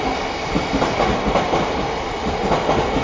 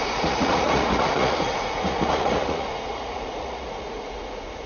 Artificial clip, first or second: second